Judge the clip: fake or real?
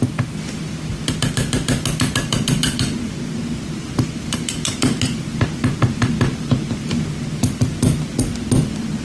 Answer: real